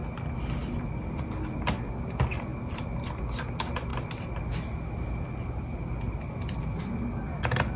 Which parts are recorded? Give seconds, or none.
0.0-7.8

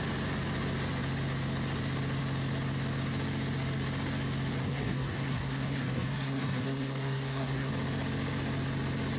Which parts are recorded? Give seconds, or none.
0.0-4.6; 7.7-9.2

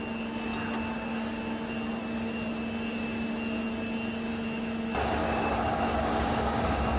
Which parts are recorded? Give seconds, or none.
0.0-5.2; 6.6-7.0